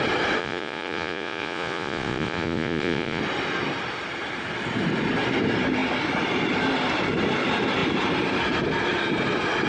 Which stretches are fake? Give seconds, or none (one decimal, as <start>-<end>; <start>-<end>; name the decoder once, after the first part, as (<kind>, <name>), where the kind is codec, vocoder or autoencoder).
0.4-3.2 (vocoder, Vocos)